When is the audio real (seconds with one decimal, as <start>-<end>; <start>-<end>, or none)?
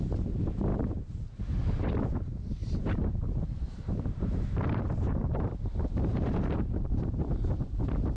0.0-0.7; 1.4-2.6; 7.0-8.2